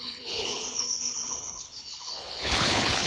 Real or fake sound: fake